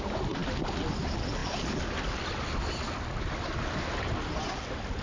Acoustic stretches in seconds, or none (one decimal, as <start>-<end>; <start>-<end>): 0.0-5.0